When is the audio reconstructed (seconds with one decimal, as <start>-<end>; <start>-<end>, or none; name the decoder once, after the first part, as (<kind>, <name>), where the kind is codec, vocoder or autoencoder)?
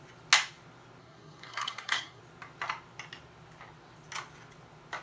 1.0-2.2 (codec, SNAC)